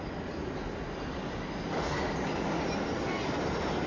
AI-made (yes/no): no